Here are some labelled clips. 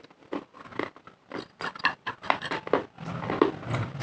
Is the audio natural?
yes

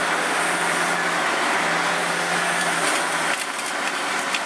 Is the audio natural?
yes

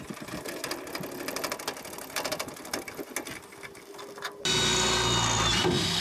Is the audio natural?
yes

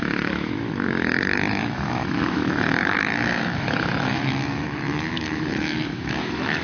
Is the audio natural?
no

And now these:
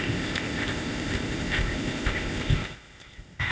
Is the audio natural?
no